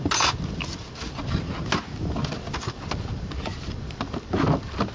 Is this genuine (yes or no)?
yes